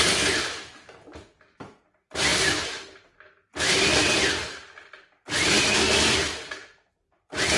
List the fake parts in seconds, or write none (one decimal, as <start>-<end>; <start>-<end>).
none

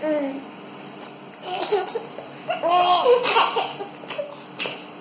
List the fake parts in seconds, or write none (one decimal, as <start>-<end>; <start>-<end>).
none

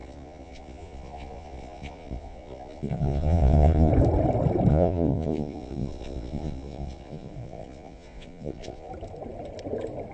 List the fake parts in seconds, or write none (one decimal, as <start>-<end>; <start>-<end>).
0.0-3.9; 4.7-8.9